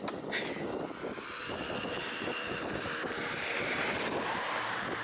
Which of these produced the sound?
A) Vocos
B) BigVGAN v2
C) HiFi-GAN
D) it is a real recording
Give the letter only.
D